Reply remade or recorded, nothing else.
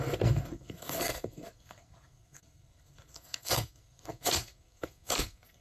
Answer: remade